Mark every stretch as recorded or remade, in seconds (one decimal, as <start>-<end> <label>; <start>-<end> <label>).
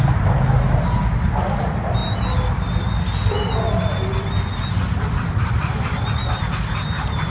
0.0-7.3 recorded